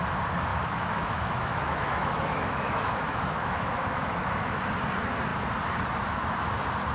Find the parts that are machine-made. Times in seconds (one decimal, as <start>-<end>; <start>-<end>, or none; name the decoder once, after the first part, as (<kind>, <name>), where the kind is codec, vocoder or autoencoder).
0.5-4.6 (autoencoder, DAC-VAE)